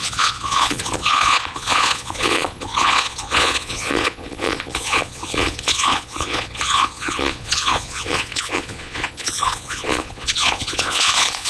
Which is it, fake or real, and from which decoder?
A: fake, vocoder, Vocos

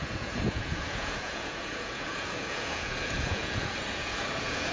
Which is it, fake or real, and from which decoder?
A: fake, vocoder, Vocos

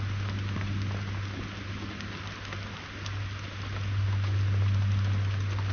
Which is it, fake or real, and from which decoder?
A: real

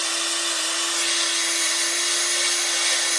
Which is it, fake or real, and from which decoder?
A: real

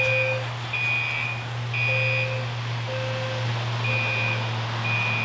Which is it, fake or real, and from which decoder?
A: real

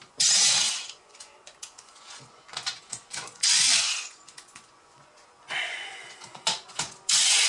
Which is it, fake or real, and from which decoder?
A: fake, vocoder, Vocos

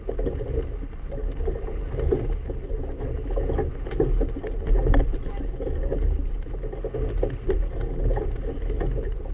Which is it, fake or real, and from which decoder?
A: real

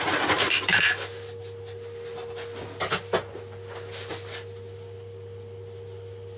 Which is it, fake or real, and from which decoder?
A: real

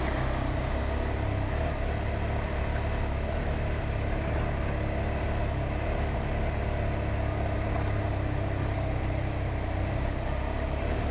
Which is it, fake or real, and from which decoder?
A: real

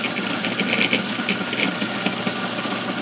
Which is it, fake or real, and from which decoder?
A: real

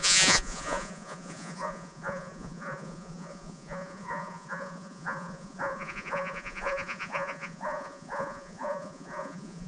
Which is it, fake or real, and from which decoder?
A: fake, vocoder, Vocos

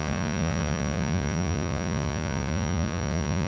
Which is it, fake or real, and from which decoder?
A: fake, vocoder, Vocos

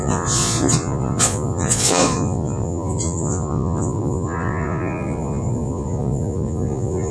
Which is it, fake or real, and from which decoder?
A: fake, vocoder, Vocos